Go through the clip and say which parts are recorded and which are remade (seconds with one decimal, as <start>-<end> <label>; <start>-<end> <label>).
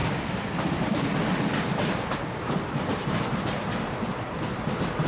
0.0-5.1 recorded